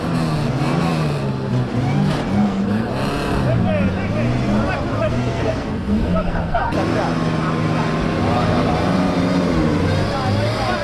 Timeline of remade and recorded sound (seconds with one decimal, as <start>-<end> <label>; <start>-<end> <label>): 0.0-2.4 recorded; 2.4-2.9 remade; 2.9-4.9 recorded; 4.9-6.6 remade; 6.6-10.8 recorded

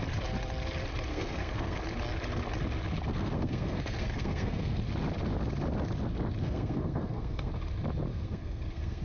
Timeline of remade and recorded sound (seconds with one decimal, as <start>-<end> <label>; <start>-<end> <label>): 0.0-1.1 recorded; 1.1-1.8 remade; 1.8-3.1 recorded; 3.1-4.8 remade; 4.8-6.4 recorded; 6.4-7.5 remade; 7.5-8.1 recorded; 8.1-9.0 remade

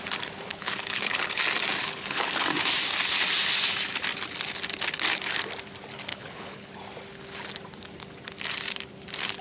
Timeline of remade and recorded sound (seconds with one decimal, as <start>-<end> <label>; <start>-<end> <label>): 0.0-0.5 recorded; 0.5-1.4 remade; 1.4-1.8 recorded; 1.8-2.3 remade; 2.3-6.1 recorded; 6.1-6.7 remade; 6.7-9.4 recorded

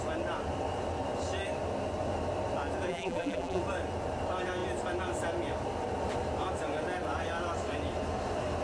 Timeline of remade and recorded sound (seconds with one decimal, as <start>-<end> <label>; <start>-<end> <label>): 0.0-2.9 recorded; 2.9-3.6 remade; 3.6-8.6 recorded

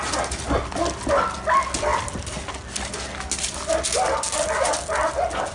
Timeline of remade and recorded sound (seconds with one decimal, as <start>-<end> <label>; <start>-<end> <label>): 0.0-5.5 recorded